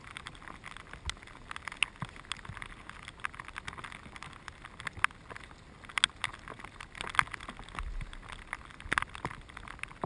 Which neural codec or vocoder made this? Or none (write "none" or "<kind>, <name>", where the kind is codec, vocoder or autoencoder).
none